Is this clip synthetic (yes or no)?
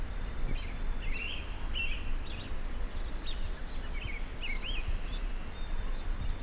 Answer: no